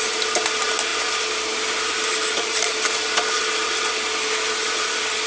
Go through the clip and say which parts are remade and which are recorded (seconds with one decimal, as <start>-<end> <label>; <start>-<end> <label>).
0.0-5.3 recorded